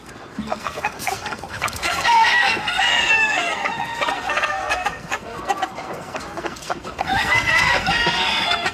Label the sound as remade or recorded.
remade